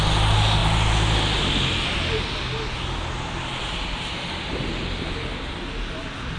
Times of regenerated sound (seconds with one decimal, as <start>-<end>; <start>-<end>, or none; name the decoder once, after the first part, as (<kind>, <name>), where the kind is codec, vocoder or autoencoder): none